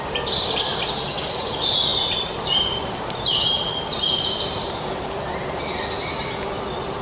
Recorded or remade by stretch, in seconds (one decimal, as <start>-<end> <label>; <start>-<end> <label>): 0.0-1.9 recorded; 1.9-5.8 remade; 5.8-7.0 recorded